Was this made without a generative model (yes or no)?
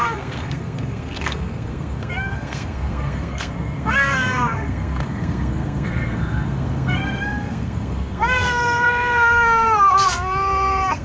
no